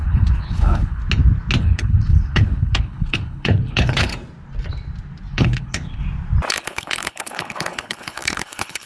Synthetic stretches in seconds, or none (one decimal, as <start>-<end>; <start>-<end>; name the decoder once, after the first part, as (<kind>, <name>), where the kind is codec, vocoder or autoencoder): 0.0-1.0 (codec, HILCodec); 1.6-4.1; 5.3-6.0; 6.5-8.9